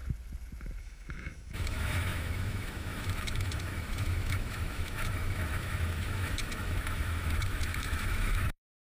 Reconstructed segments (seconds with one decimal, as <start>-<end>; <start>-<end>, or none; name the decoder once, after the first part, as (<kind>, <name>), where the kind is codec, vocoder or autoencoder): 0.8-8.9 (autoencoder, DAC-VAE)